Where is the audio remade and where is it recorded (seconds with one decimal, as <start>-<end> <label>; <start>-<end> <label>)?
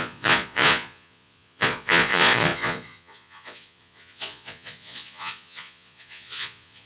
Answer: 0.0-6.9 remade